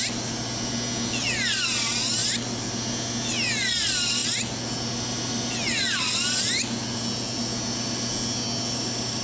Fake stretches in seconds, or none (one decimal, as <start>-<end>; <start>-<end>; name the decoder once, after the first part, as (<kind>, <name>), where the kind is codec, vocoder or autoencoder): none